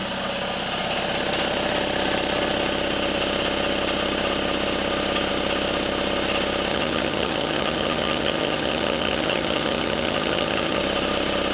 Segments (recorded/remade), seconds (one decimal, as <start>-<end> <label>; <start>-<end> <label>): 0.0-6.7 recorded; 6.7-10.8 remade; 10.8-11.5 recorded

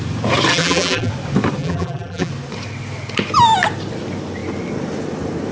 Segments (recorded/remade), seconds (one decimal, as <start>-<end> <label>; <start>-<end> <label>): 0.0-0.5 recorded; 0.5-1.1 remade; 1.1-1.6 recorded; 1.6-2.3 remade; 2.3-5.5 recorded